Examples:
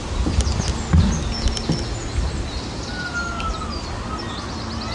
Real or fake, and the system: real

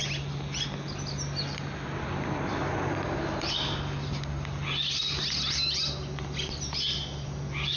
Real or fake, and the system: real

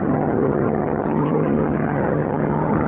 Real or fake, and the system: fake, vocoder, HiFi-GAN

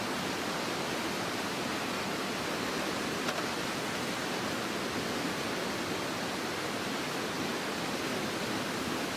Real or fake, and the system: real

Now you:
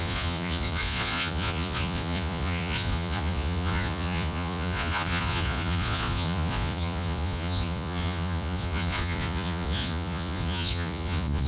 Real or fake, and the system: fake, vocoder, Vocos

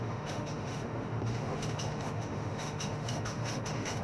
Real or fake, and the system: fake, autoencoder, DAC-VAE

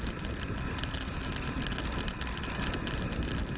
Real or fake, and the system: real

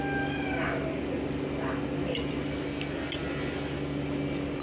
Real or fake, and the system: real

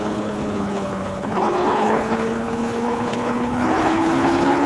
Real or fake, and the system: fake, codec, HILCodec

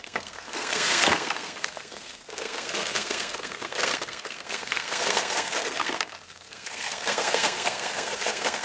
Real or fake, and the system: fake, codec, SNAC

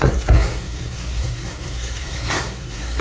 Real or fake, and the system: fake, codec, SNAC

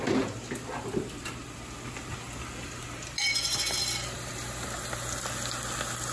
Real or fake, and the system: real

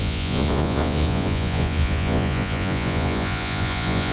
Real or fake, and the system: fake, vocoder, Vocos